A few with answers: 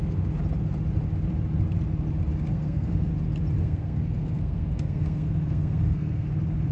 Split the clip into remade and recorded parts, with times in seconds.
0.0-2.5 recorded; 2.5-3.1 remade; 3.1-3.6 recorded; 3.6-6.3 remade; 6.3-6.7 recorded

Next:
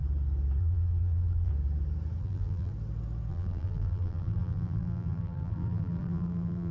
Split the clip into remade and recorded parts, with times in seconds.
0.0-0.6 recorded; 0.6-1.5 remade; 1.5-2.2 recorded; 2.2-2.7 remade; 2.7-3.3 recorded; 3.3-6.7 remade

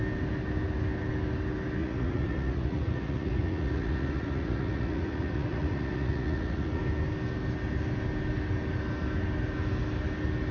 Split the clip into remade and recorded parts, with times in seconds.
0.0-1.8 recorded; 1.8-6.8 remade; 6.8-10.5 recorded